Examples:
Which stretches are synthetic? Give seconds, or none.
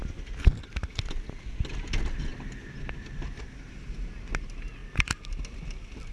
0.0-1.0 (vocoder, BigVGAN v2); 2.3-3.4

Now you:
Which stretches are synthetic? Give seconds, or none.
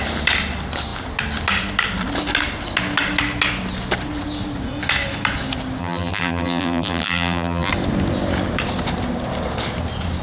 5.8-7.7 (vocoder, BigVGAN v2)